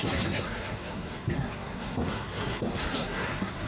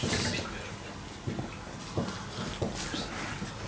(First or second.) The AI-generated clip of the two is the first